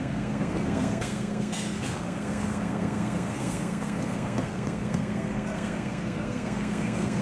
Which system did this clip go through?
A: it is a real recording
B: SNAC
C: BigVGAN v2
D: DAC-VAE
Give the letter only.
B